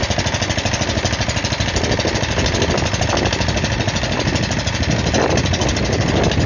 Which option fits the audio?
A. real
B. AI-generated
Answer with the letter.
A